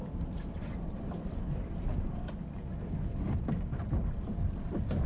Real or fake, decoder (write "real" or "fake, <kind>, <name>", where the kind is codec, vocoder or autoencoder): real